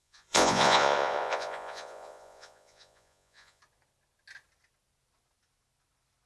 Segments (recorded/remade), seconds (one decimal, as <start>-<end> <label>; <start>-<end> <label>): 0.0-3.6 remade; 3.6-6.3 recorded